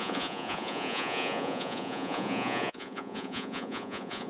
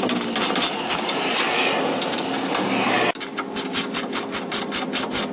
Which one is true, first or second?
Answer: second